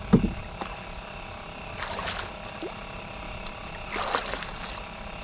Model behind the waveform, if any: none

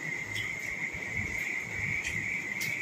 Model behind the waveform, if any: vocoder, BigVGAN v2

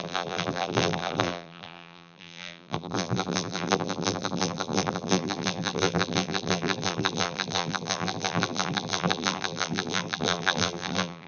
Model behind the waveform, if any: vocoder, BigVGAN v2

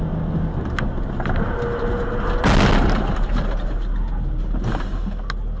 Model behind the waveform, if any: none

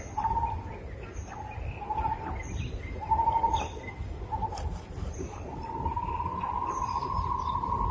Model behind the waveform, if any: none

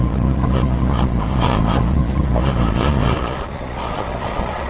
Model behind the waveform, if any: vocoder, Vocos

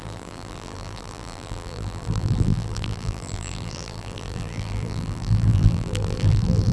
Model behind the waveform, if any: vocoder, BigVGAN v2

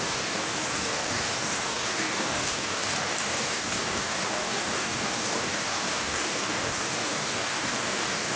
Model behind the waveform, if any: codec, DAC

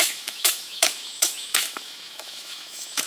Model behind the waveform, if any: autoencoder, DAC-VAE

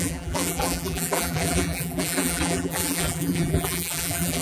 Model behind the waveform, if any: vocoder, BigVGAN v2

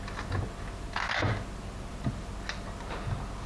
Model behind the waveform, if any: none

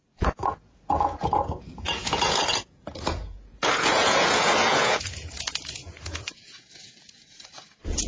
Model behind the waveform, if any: vocoder, Vocos